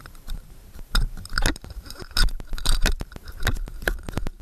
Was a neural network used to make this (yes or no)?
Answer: yes